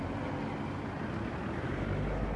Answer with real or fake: real